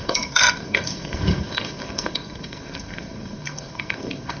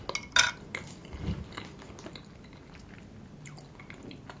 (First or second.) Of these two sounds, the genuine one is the second